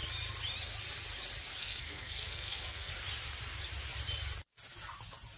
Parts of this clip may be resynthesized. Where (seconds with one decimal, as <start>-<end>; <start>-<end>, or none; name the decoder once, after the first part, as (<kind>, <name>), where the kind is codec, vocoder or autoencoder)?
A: 1.6-2.9 (codec, SNAC)